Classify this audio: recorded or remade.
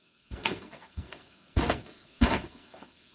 remade